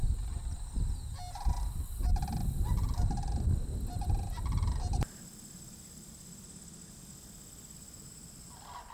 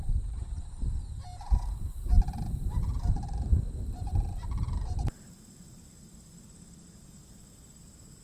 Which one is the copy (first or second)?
second